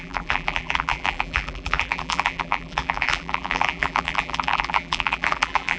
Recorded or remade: remade